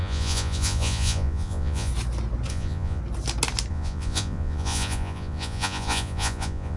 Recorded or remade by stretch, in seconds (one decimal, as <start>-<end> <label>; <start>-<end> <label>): 0.0-1.9 remade; 1.9-2.5 recorded; 2.5-3.0 remade; 3.0-3.7 recorded; 3.7-6.8 remade